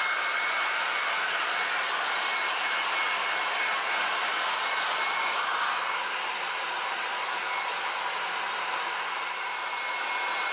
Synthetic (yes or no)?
no